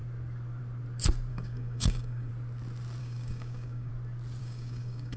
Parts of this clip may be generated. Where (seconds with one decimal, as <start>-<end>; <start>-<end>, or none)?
1.3-2.3; 3.0-3.9; 4.4-5.2